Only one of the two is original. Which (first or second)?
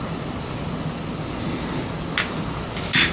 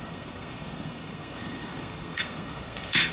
first